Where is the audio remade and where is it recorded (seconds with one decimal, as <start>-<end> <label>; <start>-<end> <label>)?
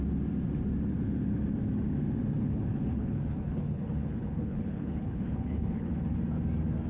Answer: 0.0-2.4 recorded; 2.4-6.2 remade; 6.2-6.9 recorded